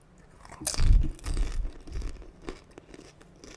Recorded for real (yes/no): yes